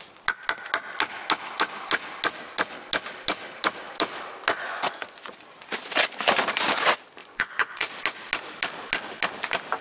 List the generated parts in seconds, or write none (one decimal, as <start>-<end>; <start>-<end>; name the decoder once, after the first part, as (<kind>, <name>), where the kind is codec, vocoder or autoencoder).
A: 4.5-5.4 (vocoder, Vocos); 7.2-7.9